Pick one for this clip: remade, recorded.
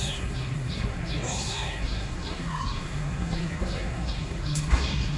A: remade